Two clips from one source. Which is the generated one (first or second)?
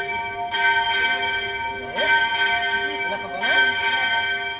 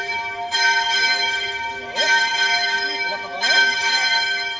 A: second